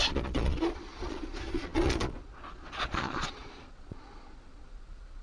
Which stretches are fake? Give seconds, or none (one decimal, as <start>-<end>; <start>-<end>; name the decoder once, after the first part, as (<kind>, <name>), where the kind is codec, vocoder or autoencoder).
0.0-5.2 (vocoder, Vocos)